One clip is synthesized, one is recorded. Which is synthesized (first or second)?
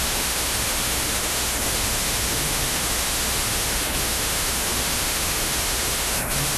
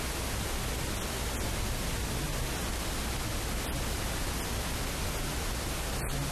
first